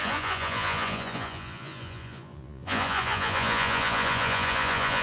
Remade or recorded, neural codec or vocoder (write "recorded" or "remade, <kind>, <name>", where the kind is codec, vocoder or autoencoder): remade, vocoder, Vocos